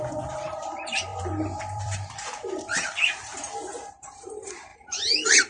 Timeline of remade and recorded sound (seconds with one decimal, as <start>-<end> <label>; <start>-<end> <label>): 0.0-3.3 remade; 3.3-3.9 recorded; 3.9-5.5 remade